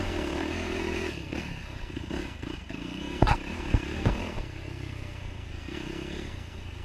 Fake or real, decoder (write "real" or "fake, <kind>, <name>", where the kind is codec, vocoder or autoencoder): fake, codec, SNAC